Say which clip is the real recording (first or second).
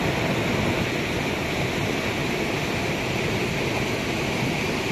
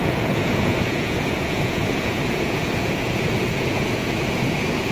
first